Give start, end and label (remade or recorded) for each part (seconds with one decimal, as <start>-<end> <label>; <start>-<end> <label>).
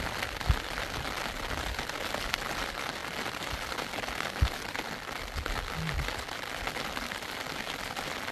0.0-8.3 recorded